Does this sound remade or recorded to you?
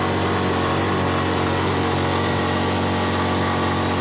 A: recorded